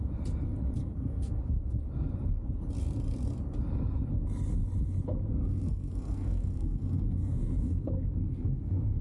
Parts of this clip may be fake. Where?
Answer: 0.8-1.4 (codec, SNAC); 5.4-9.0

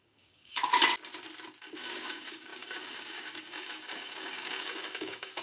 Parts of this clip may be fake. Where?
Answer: 0.0-0.7 (codec, DAC); 1.6-5.4

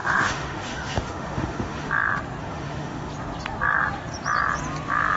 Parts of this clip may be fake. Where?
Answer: 0.0-1.9 (autoencoder, DAC-VAE); 2.4-3.1

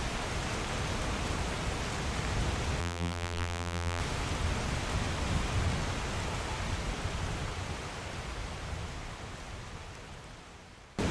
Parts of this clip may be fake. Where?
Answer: 2.8-4.0 (vocoder, BigVGAN v2)

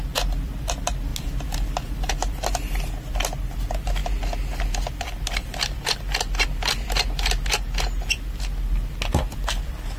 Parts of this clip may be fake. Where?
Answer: none